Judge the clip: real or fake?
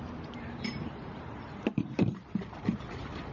fake